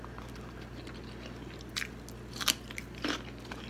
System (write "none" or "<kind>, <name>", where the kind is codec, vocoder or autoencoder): none